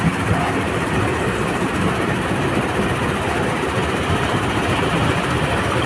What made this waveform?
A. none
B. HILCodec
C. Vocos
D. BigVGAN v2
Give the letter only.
D